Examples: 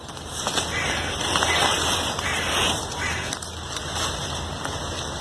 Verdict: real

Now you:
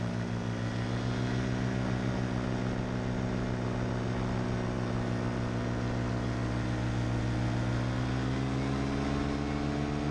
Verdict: real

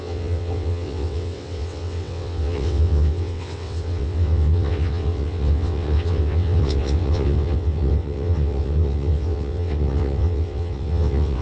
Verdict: fake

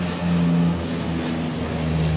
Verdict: real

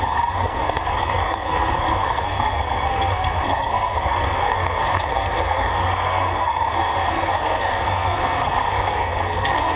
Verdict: fake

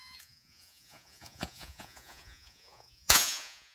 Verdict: fake